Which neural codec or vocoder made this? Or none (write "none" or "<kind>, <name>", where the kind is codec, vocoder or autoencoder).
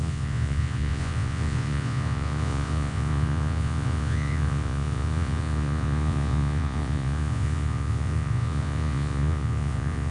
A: vocoder, Vocos